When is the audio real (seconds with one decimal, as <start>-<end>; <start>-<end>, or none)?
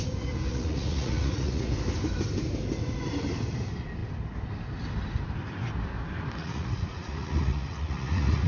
0.0-0.5; 1.7-6.4